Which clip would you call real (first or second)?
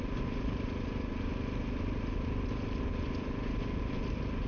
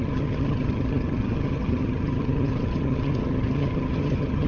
first